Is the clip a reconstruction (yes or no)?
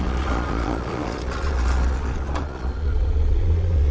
yes